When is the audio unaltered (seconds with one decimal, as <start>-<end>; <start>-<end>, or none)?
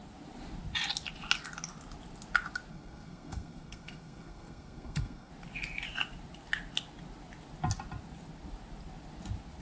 0.0-2.7; 5.3-9.6